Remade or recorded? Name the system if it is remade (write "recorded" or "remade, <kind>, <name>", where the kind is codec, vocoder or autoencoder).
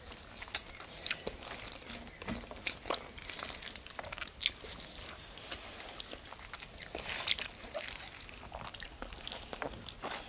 recorded